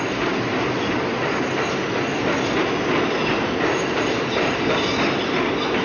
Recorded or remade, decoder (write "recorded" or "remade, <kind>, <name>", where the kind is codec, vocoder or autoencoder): recorded